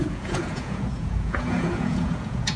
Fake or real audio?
fake